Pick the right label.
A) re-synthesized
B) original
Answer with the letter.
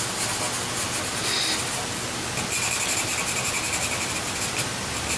B